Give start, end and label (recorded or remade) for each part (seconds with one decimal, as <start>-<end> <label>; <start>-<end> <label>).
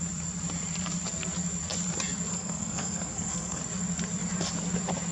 0.0-2.3 recorded; 2.3-3.6 remade; 3.6-5.1 recorded